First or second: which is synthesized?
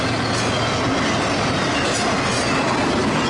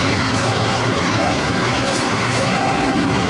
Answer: second